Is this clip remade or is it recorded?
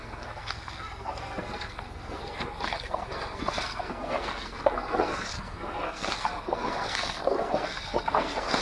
remade